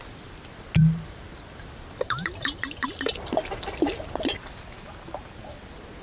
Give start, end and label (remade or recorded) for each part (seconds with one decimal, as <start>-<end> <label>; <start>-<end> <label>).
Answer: 0.0-0.8 recorded; 0.8-4.4 remade; 4.4-6.0 recorded